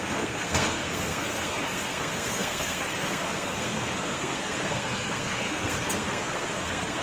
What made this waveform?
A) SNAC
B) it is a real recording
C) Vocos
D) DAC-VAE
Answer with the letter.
A